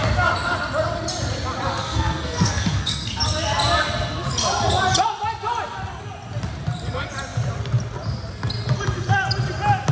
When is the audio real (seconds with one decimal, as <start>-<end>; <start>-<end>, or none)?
0.0-1.7; 3.1-9.9